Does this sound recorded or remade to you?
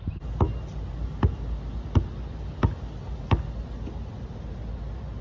recorded